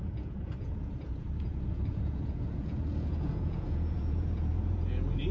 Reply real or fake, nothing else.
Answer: fake